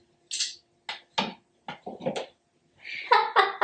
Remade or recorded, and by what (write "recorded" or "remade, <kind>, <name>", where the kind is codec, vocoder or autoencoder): recorded